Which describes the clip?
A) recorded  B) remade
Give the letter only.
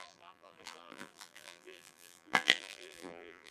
B